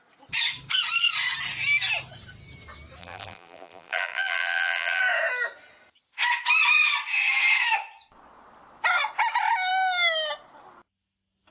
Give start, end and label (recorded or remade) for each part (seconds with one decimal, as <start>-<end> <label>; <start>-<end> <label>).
0.0-3.0 recorded; 3.0-5.0 remade; 5.0-11.5 recorded